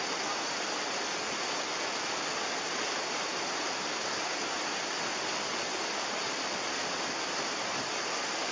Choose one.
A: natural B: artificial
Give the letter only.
A